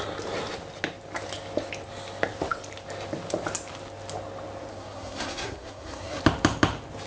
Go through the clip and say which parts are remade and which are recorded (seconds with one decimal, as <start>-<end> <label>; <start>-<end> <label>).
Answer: 0.0-4.7 recorded; 4.7-6.2 remade; 6.2-7.1 recorded